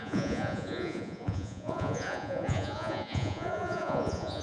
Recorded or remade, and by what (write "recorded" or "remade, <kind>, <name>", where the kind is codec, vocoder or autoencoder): remade, vocoder, Vocos